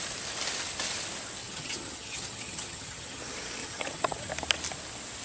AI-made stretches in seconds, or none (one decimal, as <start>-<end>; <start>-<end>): 1.4-3.2; 3.6-4.3